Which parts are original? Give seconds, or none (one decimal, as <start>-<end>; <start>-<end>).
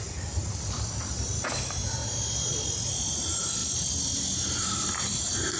0.0-5.6